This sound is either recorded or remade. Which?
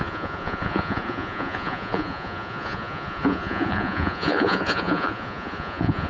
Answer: remade